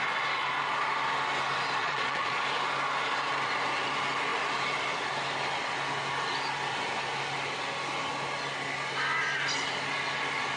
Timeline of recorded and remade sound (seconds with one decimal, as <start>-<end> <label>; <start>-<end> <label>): 0.0-1.8 recorded; 1.8-2.4 remade; 2.4-10.6 recorded